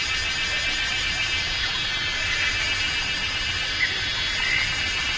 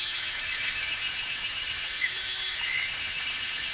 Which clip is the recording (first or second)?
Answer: first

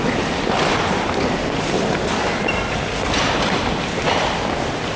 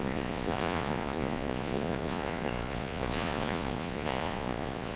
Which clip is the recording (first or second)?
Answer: first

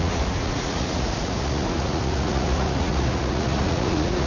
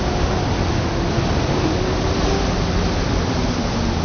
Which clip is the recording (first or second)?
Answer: second